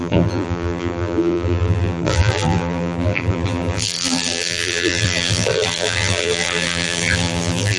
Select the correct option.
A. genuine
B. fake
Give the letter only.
B